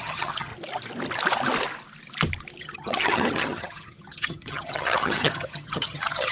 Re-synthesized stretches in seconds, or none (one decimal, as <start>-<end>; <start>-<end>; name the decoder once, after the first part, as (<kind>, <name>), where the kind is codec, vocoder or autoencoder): 0.0-0.5 (vocoder, HiFi-GAN); 2.6-6.3